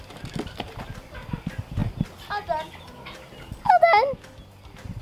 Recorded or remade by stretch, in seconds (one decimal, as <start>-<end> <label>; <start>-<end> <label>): 0.0-1.8 remade; 1.8-5.0 recorded